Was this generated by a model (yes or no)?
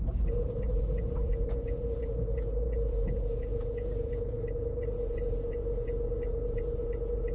yes